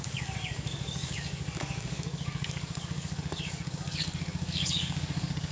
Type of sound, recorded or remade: remade